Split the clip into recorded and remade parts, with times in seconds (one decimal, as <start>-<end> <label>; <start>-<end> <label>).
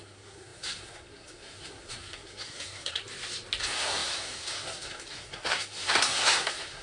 0.0-3.0 remade; 3.0-3.6 recorded; 3.6-6.8 remade